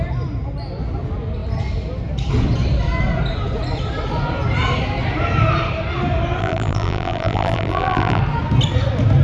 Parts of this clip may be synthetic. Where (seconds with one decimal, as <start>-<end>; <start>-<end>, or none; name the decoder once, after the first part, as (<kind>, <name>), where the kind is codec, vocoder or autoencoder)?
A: 6.4-8.2 (vocoder, BigVGAN v2)